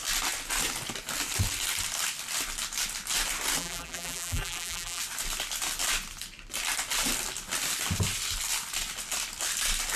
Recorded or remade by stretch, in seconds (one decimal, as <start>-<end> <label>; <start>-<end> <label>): 0.0-3.6 recorded; 3.6-5.0 remade; 5.0-10.0 recorded